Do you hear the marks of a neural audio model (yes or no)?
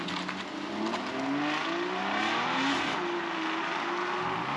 no